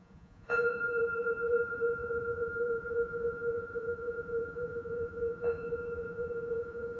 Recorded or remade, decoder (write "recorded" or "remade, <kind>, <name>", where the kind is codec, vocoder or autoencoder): remade, vocoder, Vocos